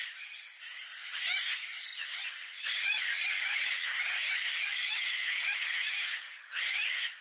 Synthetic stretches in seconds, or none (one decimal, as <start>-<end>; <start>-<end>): 1.0-1.5; 4.4-5.2